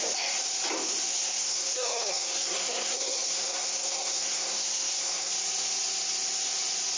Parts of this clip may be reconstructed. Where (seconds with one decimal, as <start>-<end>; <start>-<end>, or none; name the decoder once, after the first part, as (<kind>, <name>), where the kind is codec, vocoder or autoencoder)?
1.1-5.3 (codec, SNAC)